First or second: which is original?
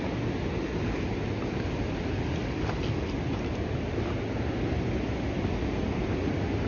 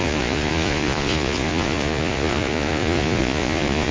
first